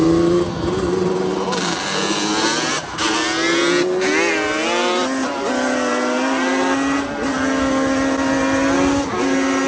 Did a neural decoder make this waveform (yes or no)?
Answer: no